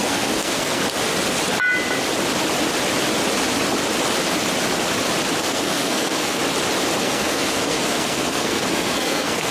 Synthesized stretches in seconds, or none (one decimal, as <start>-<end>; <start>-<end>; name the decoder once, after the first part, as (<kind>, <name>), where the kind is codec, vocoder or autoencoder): 0.0-0.8 (codec, SNAC); 5.4-6.4; 7.0-9.5